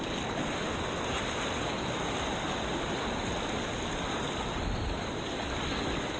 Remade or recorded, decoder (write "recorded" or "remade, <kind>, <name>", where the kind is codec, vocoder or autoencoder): recorded